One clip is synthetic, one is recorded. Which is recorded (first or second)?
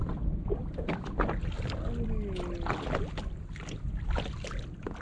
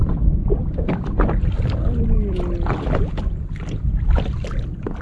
first